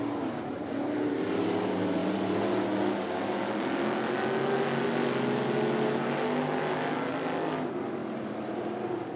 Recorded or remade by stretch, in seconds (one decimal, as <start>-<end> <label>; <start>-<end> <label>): 0.0-8.0 recorded; 8.0-8.7 remade; 8.7-9.2 recorded